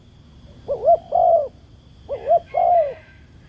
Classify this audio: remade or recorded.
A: recorded